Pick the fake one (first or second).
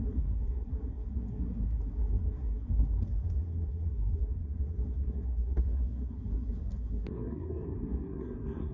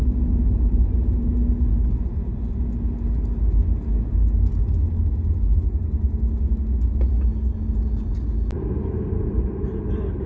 first